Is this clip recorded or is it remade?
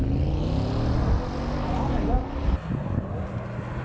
recorded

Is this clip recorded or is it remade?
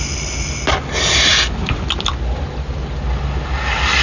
recorded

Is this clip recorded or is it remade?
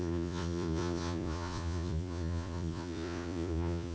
remade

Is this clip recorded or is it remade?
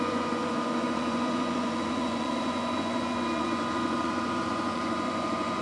remade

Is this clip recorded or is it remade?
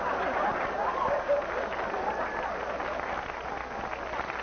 recorded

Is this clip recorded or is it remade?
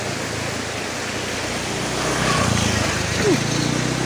recorded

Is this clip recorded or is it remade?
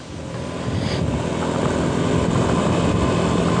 recorded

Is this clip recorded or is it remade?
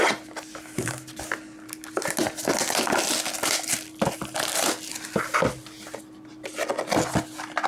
recorded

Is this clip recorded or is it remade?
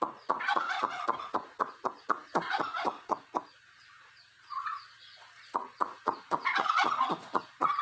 remade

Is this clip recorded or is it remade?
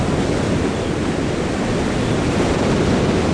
recorded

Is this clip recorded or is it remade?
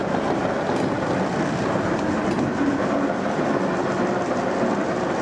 recorded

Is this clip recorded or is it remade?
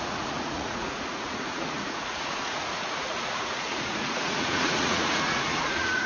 remade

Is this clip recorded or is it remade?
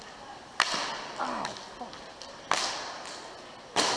recorded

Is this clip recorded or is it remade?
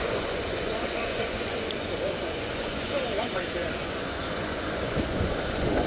remade